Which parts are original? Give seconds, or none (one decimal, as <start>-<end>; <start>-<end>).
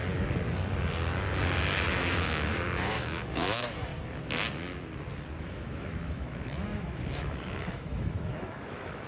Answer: 0.0-1.9; 3.9-5.4